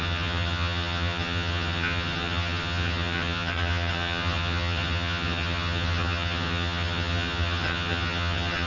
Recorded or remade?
remade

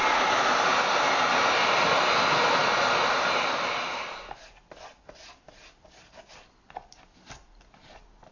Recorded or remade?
recorded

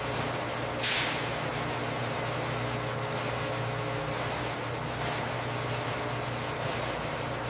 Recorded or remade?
recorded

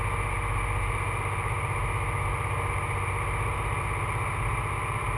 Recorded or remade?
recorded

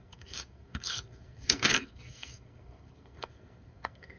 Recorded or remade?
remade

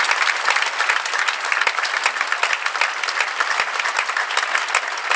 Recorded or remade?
recorded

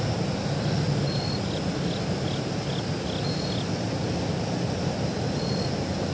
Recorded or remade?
recorded